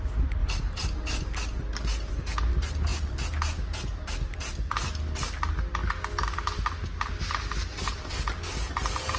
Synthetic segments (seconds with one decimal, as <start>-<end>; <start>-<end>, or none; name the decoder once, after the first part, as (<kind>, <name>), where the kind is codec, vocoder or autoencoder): none